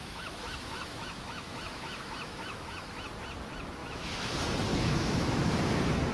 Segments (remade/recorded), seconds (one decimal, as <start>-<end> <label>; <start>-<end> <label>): 0.0-3.1 remade; 3.1-3.8 recorded; 3.8-4.3 remade; 4.3-4.7 recorded; 4.7-5.5 remade; 5.5-6.1 recorded